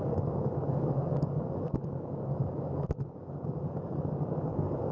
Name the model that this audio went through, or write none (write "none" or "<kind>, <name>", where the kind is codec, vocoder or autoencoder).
codec, DAC